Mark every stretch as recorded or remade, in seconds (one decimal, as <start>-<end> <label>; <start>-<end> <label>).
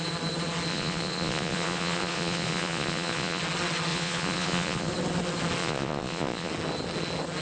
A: 0.0-0.7 recorded; 0.7-3.4 remade; 3.4-3.9 recorded; 3.9-4.9 remade; 4.9-5.6 recorded; 5.6-6.5 remade; 6.5-7.4 recorded